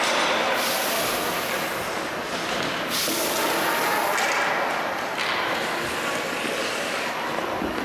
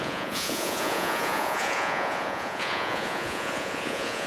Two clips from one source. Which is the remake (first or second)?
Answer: second